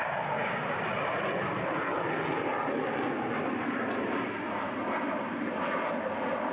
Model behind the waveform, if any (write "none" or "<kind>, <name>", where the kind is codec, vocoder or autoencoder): none